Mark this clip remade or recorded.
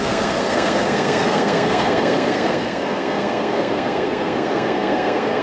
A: remade